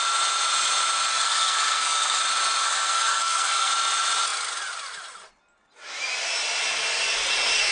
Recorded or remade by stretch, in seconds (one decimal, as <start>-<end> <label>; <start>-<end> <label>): 0.0-1.1 recorded; 1.1-2.2 remade; 2.2-2.6 recorded; 2.6-3.7 remade; 3.7-7.7 recorded